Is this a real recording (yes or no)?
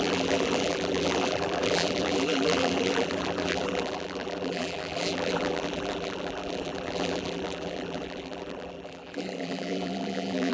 no